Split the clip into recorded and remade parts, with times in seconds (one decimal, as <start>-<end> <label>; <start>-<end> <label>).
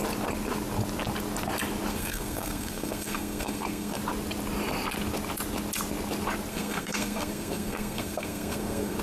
0.0-1.9 recorded; 1.9-4.0 remade; 4.0-6.5 recorded; 6.5-9.0 remade